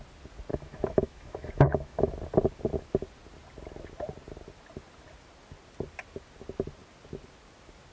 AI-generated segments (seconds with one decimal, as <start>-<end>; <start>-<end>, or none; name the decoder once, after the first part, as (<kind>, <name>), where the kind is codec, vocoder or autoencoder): 0.5-2.1 (autoencoder, DAC-VAE)